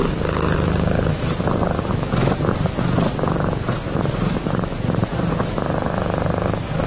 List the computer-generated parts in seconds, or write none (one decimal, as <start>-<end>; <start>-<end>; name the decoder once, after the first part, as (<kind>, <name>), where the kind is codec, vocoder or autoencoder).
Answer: none